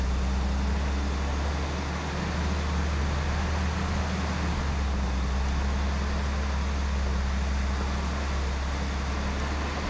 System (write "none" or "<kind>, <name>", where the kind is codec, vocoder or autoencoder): none